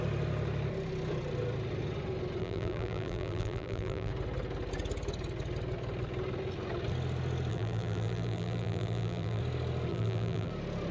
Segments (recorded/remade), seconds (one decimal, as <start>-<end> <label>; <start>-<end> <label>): 0.0-2.4 recorded; 2.4-4.1 remade; 4.1-7.5 recorded; 7.5-9.4 remade; 9.4-9.9 recorded; 9.9-10.5 remade; 10.5-10.9 recorded